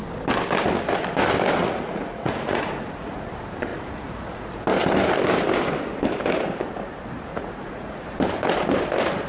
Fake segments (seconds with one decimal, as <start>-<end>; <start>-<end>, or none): 1.6-3.3; 3.7-4.6; 7.3-8.0